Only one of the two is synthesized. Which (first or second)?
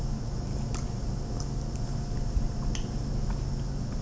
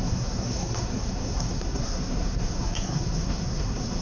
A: second